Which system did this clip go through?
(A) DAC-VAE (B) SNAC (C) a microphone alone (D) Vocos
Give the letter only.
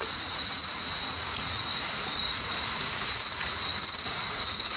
D